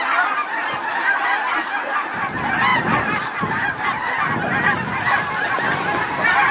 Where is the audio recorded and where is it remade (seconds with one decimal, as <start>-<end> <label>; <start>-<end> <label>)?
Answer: 0.0-2.7 recorded; 2.7-4.1 remade; 4.1-6.5 recorded